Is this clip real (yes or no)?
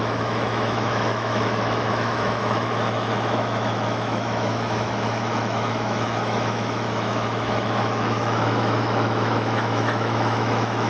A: no